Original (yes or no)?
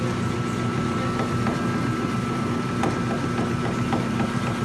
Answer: yes